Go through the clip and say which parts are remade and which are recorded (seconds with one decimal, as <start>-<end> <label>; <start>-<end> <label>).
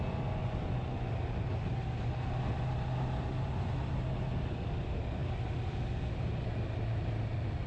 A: 0.0-0.4 recorded; 0.4-1.1 remade; 1.1-7.7 recorded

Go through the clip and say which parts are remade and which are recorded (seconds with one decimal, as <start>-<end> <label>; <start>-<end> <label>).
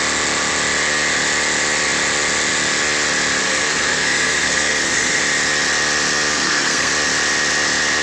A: 0.0-3.4 recorded; 3.4-5.2 remade; 5.2-6.3 recorded; 6.3-6.9 remade; 6.9-8.0 recorded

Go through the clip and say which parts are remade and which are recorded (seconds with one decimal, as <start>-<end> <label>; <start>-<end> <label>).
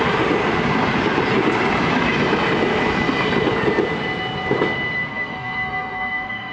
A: 0.0-5.1 recorded; 5.1-6.5 remade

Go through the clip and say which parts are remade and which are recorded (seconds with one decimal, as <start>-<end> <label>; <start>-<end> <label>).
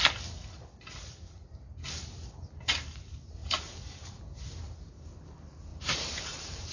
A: 0.0-3.4 recorded; 3.4-4.2 remade; 4.2-5.7 recorded; 5.7-6.7 remade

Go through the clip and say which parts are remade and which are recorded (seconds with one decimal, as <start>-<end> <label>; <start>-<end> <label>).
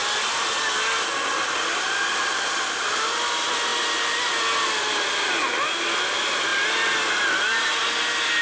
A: 0.0-8.4 recorded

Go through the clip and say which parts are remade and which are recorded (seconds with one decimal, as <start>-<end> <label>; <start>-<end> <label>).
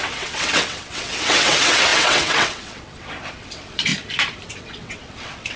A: 0.0-3.9 remade; 3.9-4.5 recorded; 4.5-5.6 remade